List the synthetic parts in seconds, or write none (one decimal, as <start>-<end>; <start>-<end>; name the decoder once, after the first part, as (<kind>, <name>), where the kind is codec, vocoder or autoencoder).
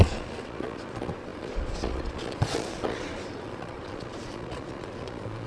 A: 0.0-5.5 (vocoder, Vocos)